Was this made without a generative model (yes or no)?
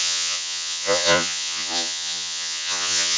no